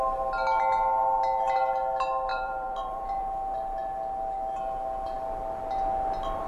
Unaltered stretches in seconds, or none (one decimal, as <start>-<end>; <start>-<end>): 0.0-2.3; 3.2-6.5